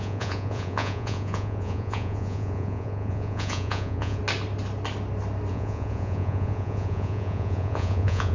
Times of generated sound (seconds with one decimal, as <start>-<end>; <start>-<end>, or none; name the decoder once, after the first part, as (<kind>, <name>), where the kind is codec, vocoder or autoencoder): 0.0-4.2 (vocoder, Vocos); 5.5-8.3

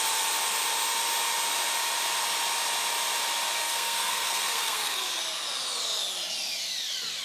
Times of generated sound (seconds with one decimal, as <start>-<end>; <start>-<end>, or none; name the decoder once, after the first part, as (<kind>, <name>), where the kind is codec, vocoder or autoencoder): 3.6-5.2 (codec, SNAC)